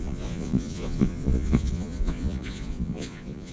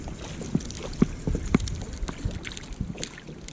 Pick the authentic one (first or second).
second